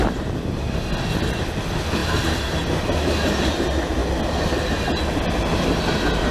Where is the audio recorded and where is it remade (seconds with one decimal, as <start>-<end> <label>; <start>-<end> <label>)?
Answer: 0.0-6.3 recorded